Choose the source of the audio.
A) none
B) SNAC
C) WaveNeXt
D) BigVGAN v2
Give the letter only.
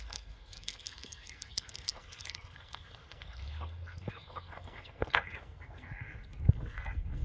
B